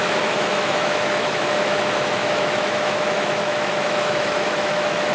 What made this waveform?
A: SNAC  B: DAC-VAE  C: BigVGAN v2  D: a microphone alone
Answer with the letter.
B